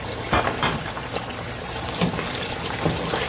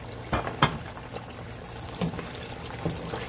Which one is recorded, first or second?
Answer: second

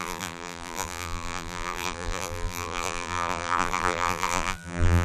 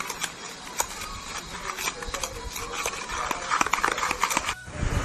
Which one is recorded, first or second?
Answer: second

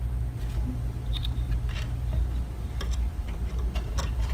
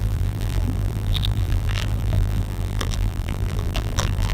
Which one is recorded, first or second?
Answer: first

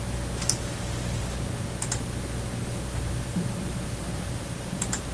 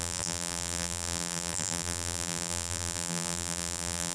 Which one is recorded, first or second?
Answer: first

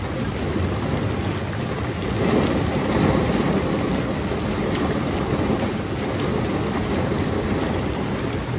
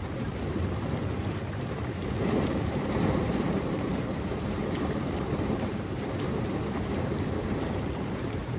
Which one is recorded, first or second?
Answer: first